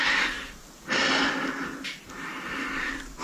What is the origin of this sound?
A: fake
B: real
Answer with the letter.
B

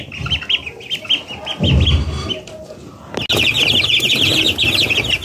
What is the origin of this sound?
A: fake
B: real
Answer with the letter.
B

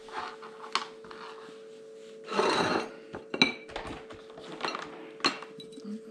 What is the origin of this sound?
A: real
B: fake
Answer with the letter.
A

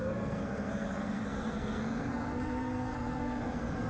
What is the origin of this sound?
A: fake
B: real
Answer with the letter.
A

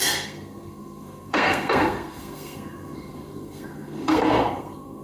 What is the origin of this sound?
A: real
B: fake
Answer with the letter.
B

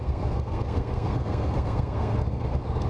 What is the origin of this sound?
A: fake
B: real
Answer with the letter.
A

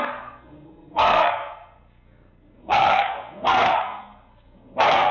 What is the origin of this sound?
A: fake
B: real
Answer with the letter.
A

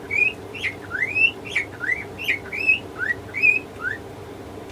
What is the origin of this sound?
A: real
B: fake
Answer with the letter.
A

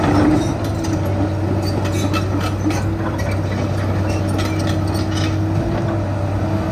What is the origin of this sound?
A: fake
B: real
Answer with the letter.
B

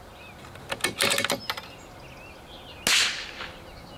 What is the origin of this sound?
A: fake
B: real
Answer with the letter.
B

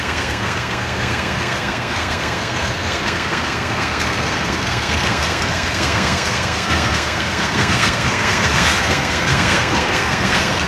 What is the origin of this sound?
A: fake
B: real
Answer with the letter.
A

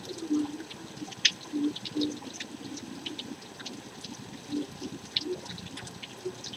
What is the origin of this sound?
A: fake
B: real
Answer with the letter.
B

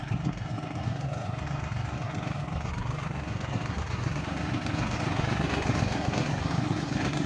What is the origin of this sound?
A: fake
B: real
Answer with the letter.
A